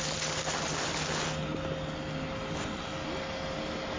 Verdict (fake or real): real